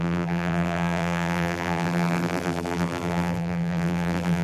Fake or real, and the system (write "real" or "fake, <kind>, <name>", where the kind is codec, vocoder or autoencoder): fake, vocoder, BigVGAN v2